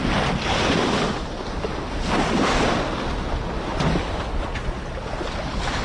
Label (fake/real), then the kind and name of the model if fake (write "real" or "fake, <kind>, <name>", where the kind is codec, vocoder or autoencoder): real